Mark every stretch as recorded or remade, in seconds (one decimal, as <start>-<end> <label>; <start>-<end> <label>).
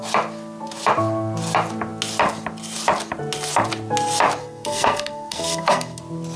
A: 0.0-4.4 recorded; 4.4-6.0 remade; 6.0-6.4 recorded